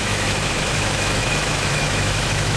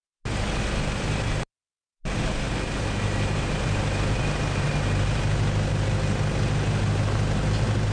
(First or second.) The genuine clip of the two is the second